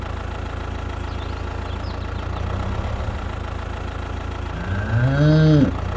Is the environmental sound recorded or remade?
recorded